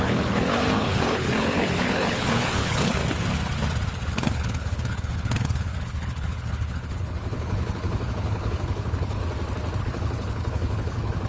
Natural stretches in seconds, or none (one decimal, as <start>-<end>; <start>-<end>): 3.0-4.1; 9.2-9.8